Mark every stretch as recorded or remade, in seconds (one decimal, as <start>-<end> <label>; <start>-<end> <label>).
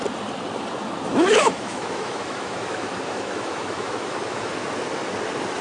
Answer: 0.0-1.1 recorded; 1.1-4.5 remade; 4.5-5.6 recorded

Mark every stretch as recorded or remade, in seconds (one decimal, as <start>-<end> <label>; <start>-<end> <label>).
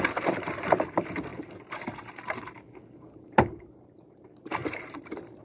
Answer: 0.0-1.3 remade; 1.3-1.9 recorded; 1.9-5.4 remade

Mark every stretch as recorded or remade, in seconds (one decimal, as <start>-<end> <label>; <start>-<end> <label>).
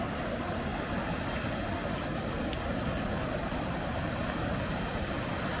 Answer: 0.0-5.6 recorded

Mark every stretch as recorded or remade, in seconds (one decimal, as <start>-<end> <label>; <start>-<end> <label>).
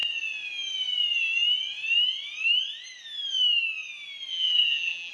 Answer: 0.0-4.3 recorded; 4.3-5.1 remade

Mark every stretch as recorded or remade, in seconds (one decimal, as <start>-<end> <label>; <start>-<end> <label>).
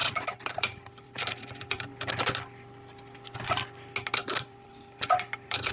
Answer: 0.0-2.1 remade; 2.1-4.2 recorded; 4.2-5.7 remade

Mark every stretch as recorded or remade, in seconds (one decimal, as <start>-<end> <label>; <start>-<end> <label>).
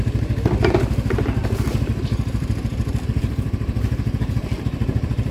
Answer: 0.0-1.9 recorded; 1.9-5.3 remade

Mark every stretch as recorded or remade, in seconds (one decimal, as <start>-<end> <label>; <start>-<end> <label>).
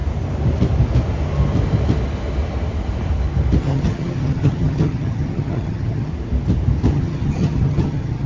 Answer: 0.0-3.6 recorded; 3.6-6.1 remade; 6.1-6.9 recorded; 6.9-8.3 remade